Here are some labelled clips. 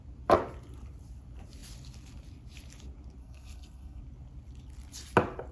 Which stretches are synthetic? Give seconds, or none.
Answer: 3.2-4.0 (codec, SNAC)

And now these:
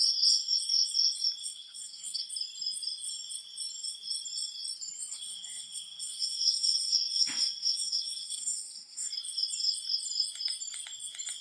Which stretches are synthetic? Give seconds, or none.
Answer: 1.4-2.3 (codec, SNAC); 5.1-9.1

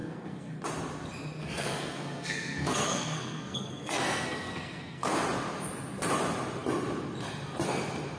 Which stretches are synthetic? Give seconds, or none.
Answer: 0.0-0.5 (codec, SNAC); 1.4-5.1

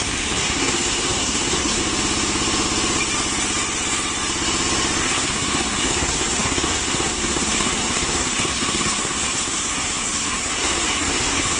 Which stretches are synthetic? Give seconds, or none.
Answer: 0.0-1.8 (codec, SNAC); 5.0-11.6

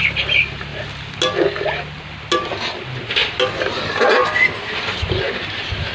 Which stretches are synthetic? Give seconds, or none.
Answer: none

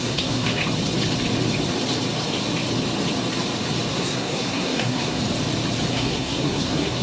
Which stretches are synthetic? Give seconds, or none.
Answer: 0.0-0.6 (codec, SNAC); 3.9-5.2; 5.9-7.0

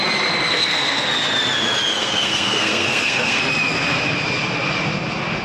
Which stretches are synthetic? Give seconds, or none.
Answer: 0.5-1.1 (codec, SNAC); 1.9-3.4